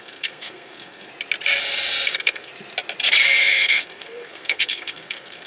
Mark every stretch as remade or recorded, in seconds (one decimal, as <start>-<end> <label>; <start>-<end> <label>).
0.0-1.1 remade; 1.1-2.1 recorded; 2.1-2.5 remade; 2.5-3.4 recorded; 3.4-5.5 remade